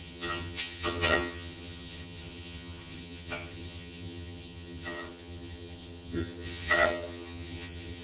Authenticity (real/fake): fake